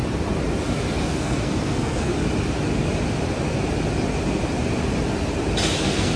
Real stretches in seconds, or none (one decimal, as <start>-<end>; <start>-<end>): 0.0-1.0; 2.1-5.8

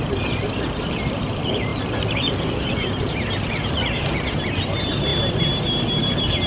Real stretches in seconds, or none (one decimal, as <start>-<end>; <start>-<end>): 5.1-6.0